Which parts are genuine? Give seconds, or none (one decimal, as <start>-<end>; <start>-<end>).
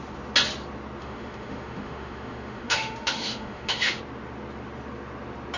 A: 0.0-1.0; 4.0-5.6